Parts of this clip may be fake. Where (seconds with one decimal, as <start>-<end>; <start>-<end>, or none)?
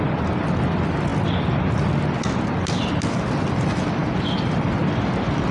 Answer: none